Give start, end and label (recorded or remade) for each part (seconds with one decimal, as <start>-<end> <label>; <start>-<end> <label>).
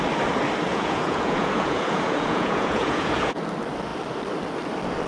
0.0-0.7 recorded; 0.7-3.4 remade; 3.4-5.1 recorded